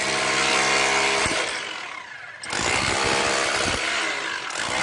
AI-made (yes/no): no